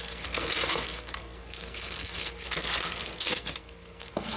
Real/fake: fake